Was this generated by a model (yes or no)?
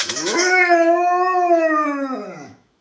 yes